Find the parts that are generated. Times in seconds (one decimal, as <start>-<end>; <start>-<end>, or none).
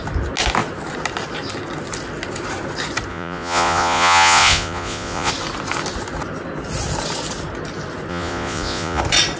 3.1-5.3; 8.1-9.0